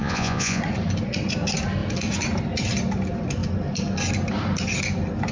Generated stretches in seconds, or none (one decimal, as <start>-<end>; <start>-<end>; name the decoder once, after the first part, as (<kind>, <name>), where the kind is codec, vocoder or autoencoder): 0.0-0.6 (vocoder, Vocos)